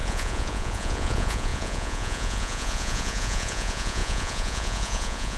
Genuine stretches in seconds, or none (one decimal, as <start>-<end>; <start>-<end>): none

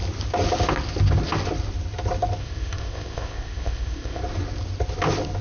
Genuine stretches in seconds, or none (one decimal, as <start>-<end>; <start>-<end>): 0.0-2.4; 4.2-5.4

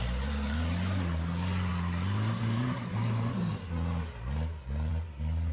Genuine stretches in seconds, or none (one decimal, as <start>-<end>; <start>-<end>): 0.0-1.7; 3.3-5.5